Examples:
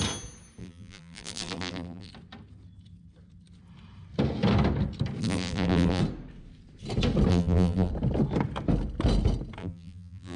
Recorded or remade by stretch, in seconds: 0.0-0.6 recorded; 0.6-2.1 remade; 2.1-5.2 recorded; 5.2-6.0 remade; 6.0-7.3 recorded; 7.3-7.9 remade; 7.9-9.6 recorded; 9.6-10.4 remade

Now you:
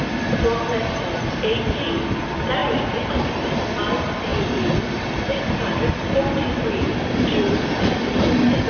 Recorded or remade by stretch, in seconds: 0.0-2.6 recorded; 2.6-3.5 remade; 3.5-8.7 recorded

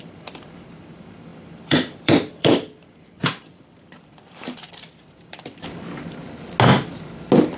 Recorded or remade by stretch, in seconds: 0.0-1.3 recorded; 1.3-5.9 remade; 5.9-7.6 recorded

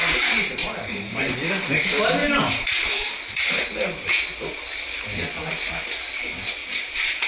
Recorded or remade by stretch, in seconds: 0.0-0.6 recorded; 0.6-1.2 remade; 1.2-2.2 recorded; 2.2-3.4 remade; 3.4-6.6 recorded; 6.6-7.3 remade

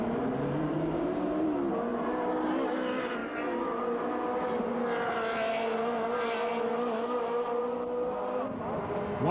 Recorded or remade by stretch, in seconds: 0.0-1.9 recorded; 1.9-2.5 remade; 2.5-9.3 recorded

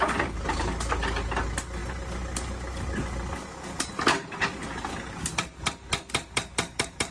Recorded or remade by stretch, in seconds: 0.0-7.1 recorded

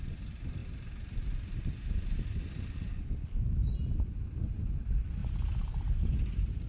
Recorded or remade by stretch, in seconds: 0.0-5.2 recorded; 5.2-5.9 remade; 5.9-6.7 recorded